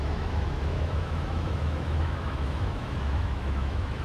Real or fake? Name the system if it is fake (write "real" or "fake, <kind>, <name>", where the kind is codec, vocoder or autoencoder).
fake, autoencoder, DAC-VAE